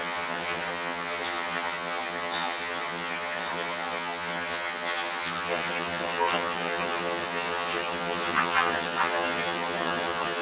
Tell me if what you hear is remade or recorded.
remade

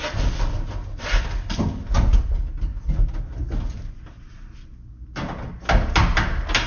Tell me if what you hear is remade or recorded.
recorded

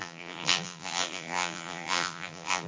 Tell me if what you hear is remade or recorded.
remade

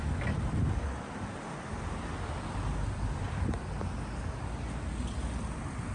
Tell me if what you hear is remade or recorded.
recorded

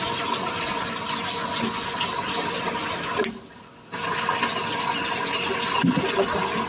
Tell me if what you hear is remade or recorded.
recorded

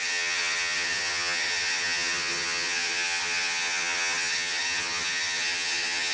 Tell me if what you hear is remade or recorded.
remade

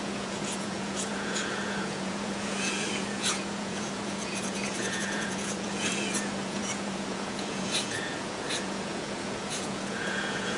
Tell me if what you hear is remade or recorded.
remade